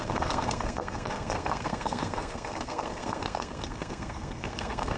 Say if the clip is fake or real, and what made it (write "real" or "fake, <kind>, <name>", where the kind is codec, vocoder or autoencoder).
fake, codec, SNAC